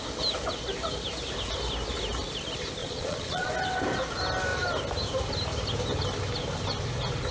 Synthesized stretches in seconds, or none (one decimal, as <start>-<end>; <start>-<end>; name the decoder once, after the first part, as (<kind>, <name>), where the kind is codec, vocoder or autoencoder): 2.8-3.5 (vocoder, Vocos)